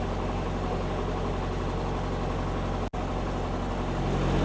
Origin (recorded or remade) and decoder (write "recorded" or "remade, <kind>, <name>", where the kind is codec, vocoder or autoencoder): recorded